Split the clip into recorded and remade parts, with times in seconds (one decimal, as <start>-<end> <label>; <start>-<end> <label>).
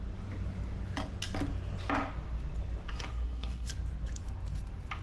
0.0-2.9 recorded; 2.9-3.7 remade; 3.7-5.0 recorded